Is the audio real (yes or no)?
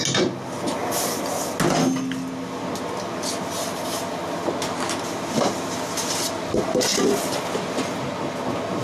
yes